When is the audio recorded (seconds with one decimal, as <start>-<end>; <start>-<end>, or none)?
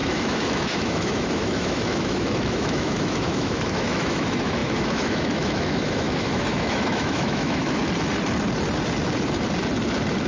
7.8-10.3